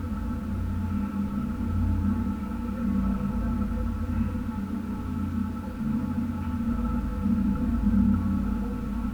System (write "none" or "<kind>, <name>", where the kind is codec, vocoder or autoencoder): none